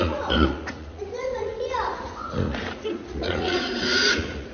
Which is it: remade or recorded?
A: remade